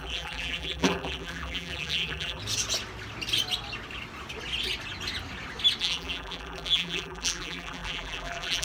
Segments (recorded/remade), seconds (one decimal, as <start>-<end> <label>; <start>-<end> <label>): 0.0-2.4 remade; 2.4-5.8 recorded; 5.8-8.6 remade